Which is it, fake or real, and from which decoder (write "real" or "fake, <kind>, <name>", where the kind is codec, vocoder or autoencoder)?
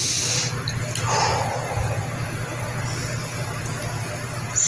real